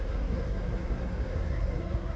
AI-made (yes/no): yes